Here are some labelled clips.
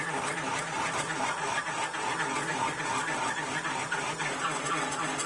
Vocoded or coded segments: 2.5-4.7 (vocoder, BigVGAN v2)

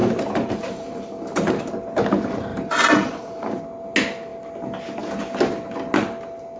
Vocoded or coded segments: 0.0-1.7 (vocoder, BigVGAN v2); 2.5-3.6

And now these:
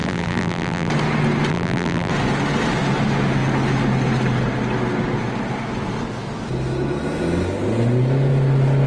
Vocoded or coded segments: 0.0-0.9 (vocoder, BigVGAN v2); 1.5-2.1

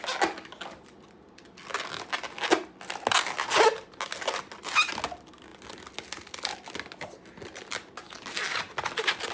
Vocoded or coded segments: none

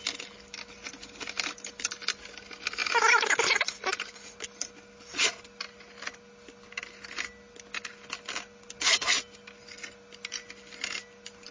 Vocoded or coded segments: 2.8-3.9 (vocoder, BigVGAN v2)

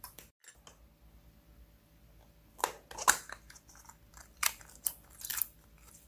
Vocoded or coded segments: 0.0-0.4 (vocoder, BigVGAN v2); 4.1-6.1

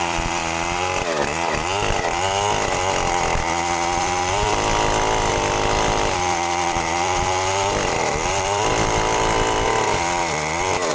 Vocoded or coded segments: 0.0-0.4 (vocoder, BigVGAN v2); 4.0-4.7; 5.3-10.9